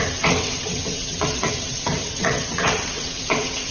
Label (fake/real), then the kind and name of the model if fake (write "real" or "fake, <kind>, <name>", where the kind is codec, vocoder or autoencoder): fake, vocoder, WaveNeXt